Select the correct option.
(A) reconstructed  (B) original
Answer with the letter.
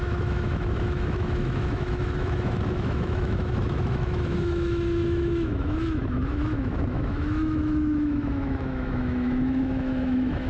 A